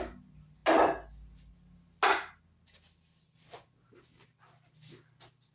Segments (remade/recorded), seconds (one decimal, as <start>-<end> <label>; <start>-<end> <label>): 0.0-5.5 recorded